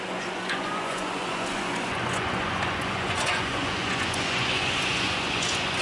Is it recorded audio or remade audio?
remade